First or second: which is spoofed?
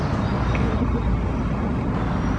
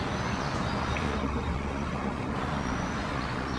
second